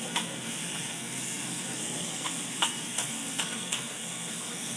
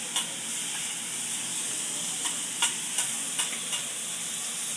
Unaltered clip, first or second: second